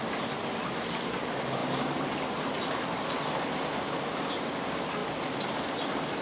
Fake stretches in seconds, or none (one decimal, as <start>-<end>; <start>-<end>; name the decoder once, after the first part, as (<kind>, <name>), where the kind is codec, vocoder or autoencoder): none